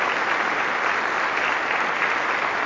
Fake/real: real